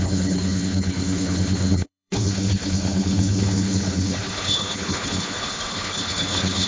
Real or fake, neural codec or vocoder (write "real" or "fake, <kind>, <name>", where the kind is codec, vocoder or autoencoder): fake, codec, HILCodec